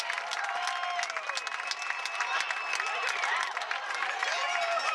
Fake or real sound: real